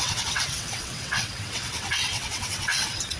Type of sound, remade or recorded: remade